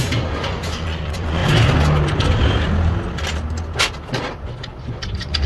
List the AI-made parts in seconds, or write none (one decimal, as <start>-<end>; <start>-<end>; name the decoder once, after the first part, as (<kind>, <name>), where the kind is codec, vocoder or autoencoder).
0.0-1.4 (vocoder, Vocos); 4.4-5.5